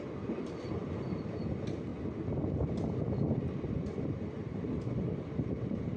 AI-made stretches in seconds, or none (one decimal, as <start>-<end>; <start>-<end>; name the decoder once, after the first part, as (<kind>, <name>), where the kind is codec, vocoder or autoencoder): 0.0-1.9 (vocoder, BigVGAN v2); 3.7-6.0